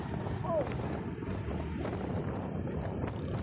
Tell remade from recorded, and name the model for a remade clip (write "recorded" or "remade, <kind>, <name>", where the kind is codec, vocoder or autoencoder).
recorded